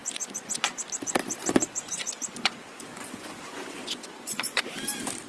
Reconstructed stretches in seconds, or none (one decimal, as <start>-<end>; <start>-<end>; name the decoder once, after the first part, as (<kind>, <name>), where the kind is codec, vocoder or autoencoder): 0.0-0.8 (vocoder, Vocos); 1.4-4.6